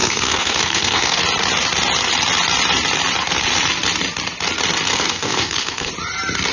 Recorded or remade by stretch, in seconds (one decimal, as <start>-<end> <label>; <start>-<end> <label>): 0.0-1.2 remade; 1.2-4.9 recorded; 4.9-5.9 remade; 5.9-6.5 recorded